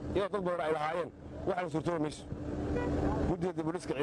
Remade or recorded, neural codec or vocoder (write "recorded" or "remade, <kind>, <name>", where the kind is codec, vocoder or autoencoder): recorded